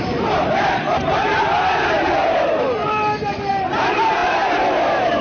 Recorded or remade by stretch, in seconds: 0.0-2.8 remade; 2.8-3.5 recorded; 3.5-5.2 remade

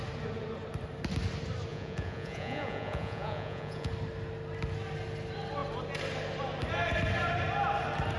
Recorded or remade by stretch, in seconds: 0.0-1.7 recorded; 1.7-3.9 remade; 3.9-8.2 recorded